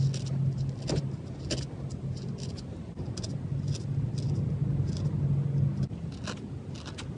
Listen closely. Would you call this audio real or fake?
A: real